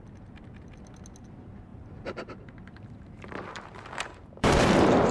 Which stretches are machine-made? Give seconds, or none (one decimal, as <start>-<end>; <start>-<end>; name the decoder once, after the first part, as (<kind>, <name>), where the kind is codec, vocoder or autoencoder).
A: 1.7-5.1 (vocoder, BigVGAN v2)